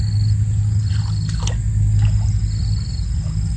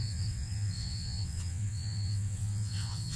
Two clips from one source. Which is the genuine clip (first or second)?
first